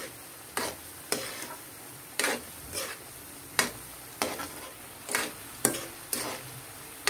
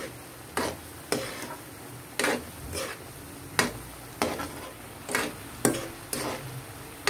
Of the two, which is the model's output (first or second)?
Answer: first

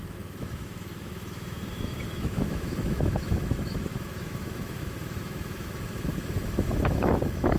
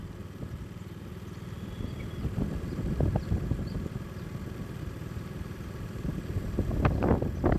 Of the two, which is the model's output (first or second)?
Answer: first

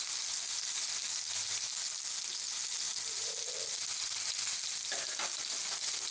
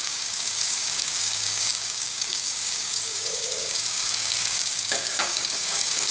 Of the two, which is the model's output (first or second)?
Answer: second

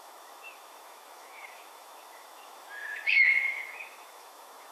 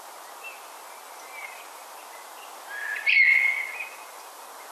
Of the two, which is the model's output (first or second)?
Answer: first